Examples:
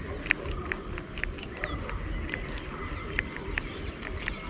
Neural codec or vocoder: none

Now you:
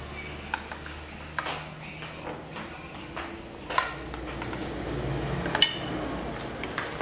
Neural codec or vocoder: none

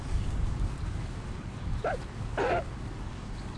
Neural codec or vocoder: codec, DAC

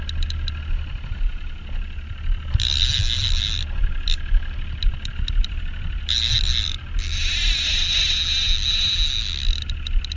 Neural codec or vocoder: none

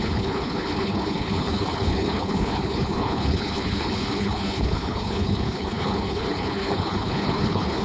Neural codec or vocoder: codec, HILCodec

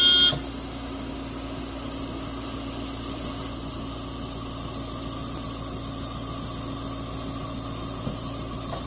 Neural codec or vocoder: none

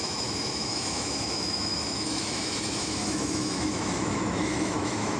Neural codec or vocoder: autoencoder, DAC-VAE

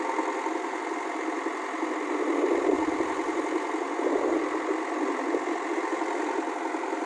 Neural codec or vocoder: none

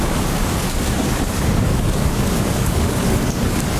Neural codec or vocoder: codec, DAC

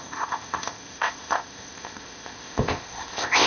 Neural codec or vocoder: codec, ZipCodec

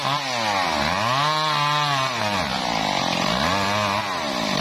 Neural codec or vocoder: none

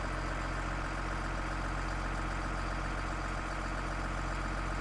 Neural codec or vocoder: none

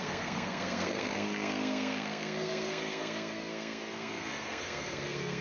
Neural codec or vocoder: codec, SNAC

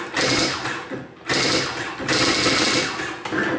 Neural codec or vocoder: none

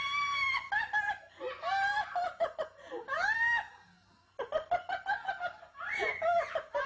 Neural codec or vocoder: none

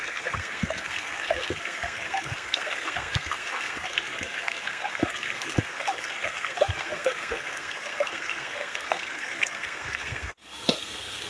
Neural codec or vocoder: codec, SNAC